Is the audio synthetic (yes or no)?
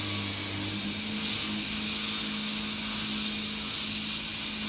no